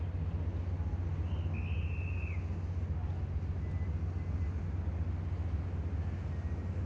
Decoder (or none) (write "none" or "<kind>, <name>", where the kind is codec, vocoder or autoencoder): none